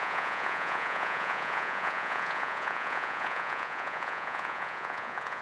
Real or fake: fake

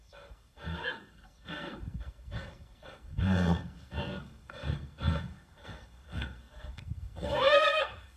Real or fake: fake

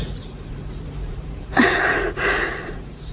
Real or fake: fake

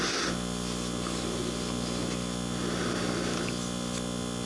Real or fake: real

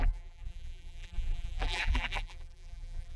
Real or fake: fake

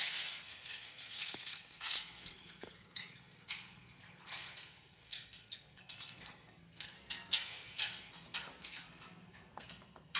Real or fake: fake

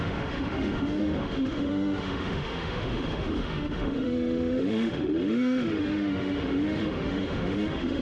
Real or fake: fake